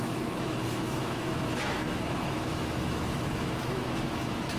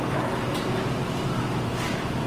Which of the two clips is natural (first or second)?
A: second